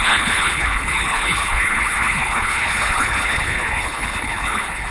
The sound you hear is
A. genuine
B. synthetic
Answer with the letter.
B